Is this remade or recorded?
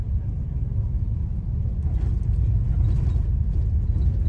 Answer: recorded